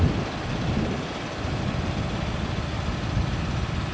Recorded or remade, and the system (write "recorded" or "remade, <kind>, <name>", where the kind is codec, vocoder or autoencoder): recorded